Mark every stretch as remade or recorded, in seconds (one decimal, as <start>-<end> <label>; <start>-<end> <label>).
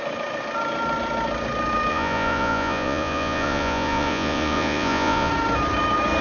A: 0.0-1.9 recorded; 1.9-5.3 remade; 5.3-6.2 recorded